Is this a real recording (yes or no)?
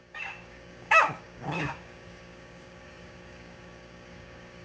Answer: no